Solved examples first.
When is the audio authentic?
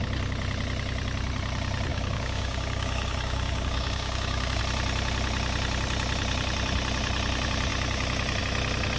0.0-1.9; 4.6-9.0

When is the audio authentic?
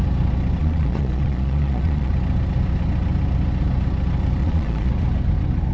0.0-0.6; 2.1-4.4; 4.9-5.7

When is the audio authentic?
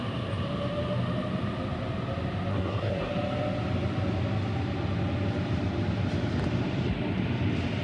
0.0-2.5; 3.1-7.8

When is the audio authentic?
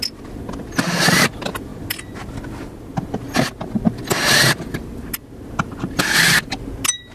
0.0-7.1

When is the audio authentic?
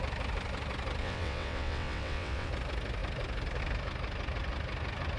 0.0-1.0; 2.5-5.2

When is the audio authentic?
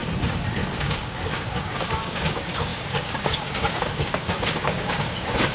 0.0-0.7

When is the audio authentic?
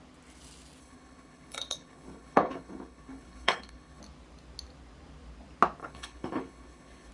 0.0-0.8; 4.0-5.8